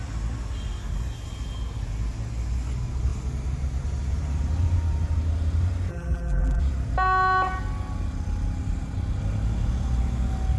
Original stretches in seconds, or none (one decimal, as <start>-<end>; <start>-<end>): 0.0-5.9; 6.6-10.6

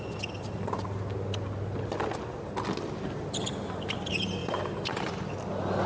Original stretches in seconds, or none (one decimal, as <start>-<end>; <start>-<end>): 0.0-4.4; 5.3-5.9

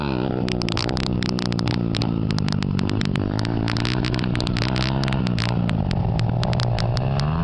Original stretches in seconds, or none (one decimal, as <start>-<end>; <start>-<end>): 0.0-0.8; 3.4-7.4